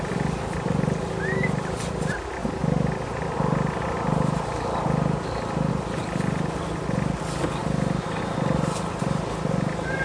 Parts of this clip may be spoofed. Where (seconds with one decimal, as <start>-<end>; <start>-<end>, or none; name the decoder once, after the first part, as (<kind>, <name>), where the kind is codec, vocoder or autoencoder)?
none